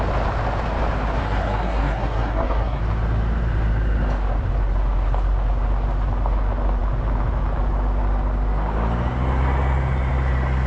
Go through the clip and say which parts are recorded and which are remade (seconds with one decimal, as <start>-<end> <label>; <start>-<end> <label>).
0.0-1.2 recorded; 1.2-2.8 remade; 2.8-10.7 recorded